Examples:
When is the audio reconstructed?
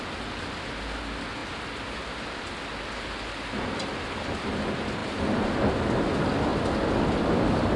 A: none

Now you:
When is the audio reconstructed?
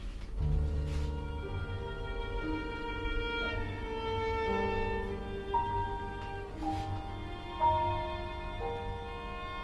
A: none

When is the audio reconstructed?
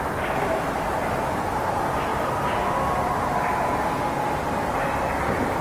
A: none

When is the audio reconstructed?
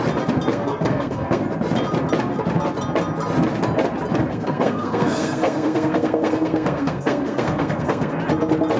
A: 0.5-1.4 (codec, SNAC); 4.3-8.2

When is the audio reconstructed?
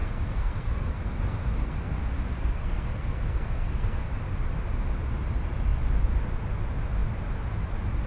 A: 0.0-2.0 (codec, SNAC); 2.4-4.1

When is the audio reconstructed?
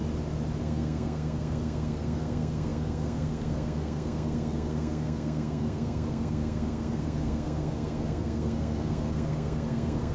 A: 0.6-10.1 (codec, SNAC)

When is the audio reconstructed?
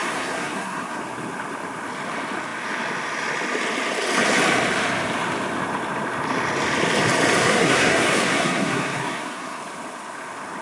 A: 0.0-1.0 (codec, SNAC); 7.4-9.6